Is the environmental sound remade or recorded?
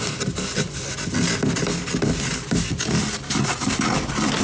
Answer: recorded